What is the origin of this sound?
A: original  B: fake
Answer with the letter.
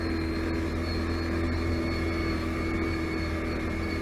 A